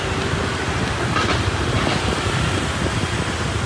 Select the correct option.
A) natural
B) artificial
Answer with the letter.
A